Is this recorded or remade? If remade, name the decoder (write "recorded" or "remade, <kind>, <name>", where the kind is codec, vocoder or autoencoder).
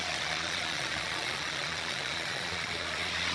remade, vocoder, Vocos